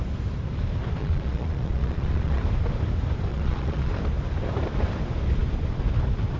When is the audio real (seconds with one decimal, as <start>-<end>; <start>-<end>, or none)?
0.0-1.0; 2.4-3.3; 3.9-6.4